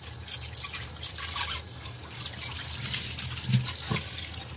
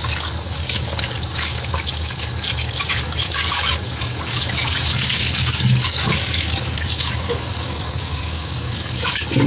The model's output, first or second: second